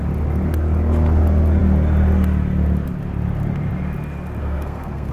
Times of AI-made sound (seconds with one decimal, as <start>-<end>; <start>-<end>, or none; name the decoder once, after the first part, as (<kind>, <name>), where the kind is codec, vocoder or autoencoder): 4.4-5.1 (codec, SNAC)